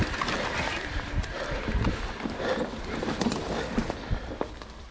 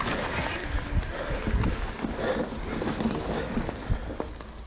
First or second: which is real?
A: second